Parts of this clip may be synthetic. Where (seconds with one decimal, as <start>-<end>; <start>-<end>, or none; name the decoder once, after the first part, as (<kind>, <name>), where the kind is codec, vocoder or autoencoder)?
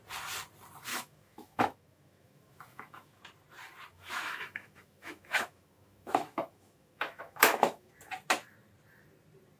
0.9-3.2 (autoencoder, DAC-VAE); 3.9-7.9